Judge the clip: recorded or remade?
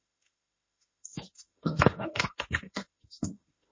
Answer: remade